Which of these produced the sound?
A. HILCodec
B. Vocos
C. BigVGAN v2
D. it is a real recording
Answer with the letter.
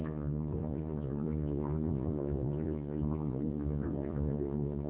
B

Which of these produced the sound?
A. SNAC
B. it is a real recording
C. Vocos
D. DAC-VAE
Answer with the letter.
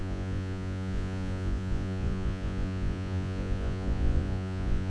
C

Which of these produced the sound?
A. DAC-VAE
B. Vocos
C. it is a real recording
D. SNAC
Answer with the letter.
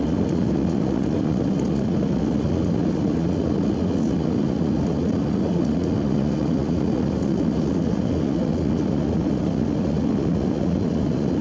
B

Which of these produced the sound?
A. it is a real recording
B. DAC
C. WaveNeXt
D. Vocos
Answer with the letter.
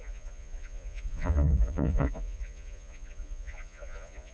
D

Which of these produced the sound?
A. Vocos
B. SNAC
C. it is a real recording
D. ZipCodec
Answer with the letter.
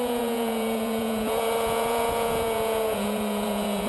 A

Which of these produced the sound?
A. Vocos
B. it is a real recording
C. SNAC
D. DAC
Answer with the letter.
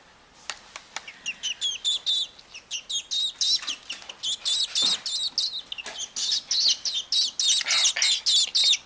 B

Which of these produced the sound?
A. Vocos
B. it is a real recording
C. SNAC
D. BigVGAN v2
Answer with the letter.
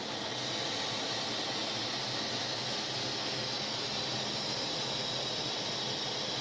B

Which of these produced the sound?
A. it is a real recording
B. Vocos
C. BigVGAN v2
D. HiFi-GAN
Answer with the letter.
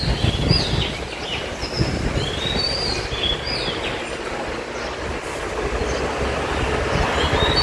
A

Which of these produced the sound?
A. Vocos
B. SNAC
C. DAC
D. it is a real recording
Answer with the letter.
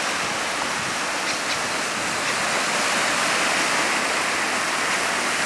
D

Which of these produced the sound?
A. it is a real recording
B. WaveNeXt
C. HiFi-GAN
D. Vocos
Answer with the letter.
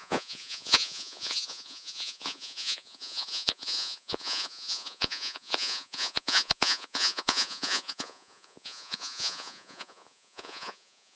D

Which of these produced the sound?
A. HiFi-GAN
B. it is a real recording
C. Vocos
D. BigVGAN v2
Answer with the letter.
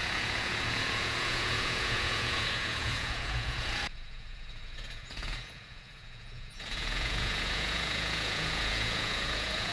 C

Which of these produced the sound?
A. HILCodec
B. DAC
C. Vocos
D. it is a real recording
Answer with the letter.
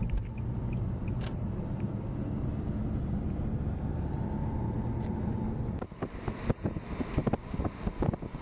D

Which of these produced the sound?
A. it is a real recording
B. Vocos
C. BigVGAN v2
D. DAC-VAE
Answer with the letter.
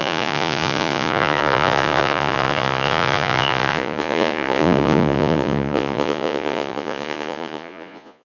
B